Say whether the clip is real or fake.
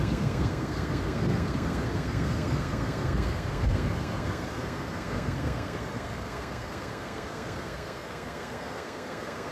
fake